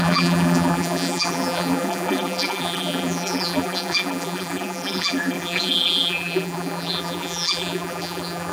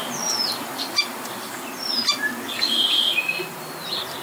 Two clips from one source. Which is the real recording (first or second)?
second